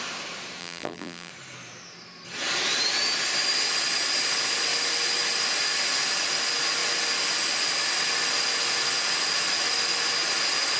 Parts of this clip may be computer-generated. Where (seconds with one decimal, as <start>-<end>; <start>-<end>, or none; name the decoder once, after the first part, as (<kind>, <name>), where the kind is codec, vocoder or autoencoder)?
0.6-1.3 (vocoder, BigVGAN v2)

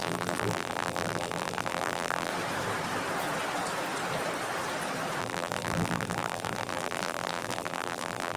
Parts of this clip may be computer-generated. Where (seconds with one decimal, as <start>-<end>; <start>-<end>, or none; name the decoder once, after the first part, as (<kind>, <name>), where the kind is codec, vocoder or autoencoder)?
0.0-2.3 (vocoder, BigVGAN v2); 5.2-8.4

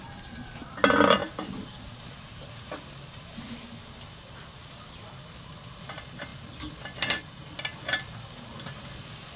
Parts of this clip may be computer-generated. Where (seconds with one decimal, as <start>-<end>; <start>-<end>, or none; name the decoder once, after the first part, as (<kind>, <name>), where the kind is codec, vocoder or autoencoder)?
none

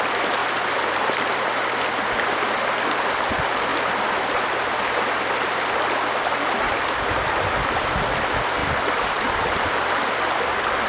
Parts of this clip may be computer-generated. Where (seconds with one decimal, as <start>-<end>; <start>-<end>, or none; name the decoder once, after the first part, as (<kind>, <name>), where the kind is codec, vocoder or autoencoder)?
8.6-10.9 (vocoder, BigVGAN v2)

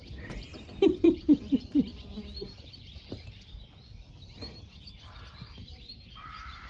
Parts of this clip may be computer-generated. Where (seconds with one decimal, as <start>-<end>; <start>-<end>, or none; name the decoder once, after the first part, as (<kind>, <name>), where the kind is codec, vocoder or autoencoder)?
0.0-1.9 (vocoder, BigVGAN v2); 5.9-6.7

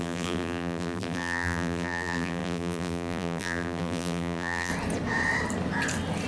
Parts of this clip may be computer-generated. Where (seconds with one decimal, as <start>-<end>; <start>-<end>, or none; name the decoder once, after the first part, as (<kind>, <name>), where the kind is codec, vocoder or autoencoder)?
0.0-4.7 (vocoder, BigVGAN v2)

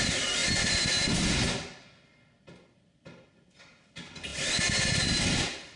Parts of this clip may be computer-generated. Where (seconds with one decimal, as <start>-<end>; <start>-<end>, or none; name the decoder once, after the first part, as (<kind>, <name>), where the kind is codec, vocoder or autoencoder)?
none